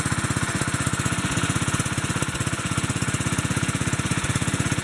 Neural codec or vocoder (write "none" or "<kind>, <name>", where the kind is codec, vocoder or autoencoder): vocoder, Vocos